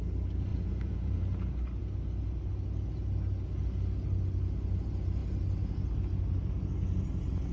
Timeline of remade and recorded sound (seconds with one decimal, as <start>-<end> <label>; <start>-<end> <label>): 0.0-0.5 recorded; 0.5-1.2 remade; 1.2-7.5 recorded